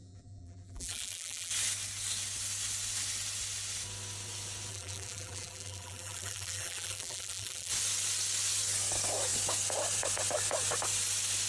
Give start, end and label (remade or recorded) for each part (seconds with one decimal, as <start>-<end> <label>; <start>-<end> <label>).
0.0-1.5 remade; 1.5-4.7 recorded; 4.7-7.7 remade; 7.7-11.5 recorded